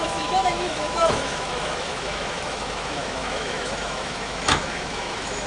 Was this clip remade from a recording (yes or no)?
yes